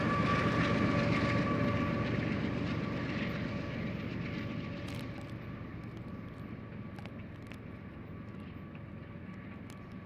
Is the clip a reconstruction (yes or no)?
no